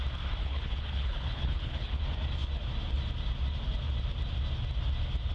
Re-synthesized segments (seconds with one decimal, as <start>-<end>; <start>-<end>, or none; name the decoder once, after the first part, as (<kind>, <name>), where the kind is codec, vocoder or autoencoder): 0.4-2.0 (codec, HILCodec)